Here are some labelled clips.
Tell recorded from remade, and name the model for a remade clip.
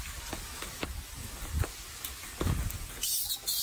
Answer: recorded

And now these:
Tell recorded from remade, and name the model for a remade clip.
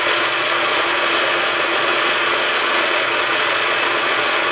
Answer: remade, vocoder, Vocos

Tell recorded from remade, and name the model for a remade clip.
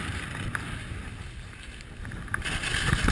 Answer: recorded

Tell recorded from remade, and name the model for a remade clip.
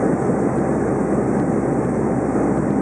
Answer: recorded